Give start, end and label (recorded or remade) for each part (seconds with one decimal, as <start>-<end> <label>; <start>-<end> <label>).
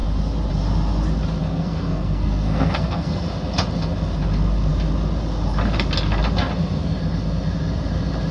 0.0-1.4 recorded; 1.4-3.2 remade; 3.2-8.3 recorded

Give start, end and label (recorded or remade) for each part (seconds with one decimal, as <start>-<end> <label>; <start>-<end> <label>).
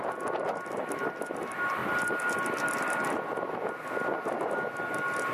0.0-5.3 recorded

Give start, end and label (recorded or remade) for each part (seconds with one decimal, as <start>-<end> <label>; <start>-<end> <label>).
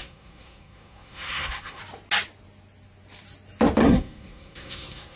0.0-1.8 remade; 1.8-3.8 recorded; 3.8-5.2 remade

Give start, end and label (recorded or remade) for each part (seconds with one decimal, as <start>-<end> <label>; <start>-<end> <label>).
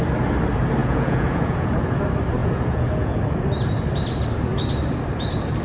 0.0-0.8 recorded; 0.8-2.0 remade; 2.0-2.4 recorded; 2.4-3.2 remade; 3.2-5.6 recorded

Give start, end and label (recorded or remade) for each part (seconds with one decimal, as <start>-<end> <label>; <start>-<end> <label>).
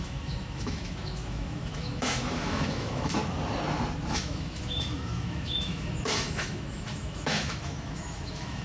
0.0-3.2 remade; 3.2-4.1 recorded; 4.1-8.6 remade